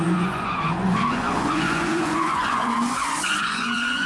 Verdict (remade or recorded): remade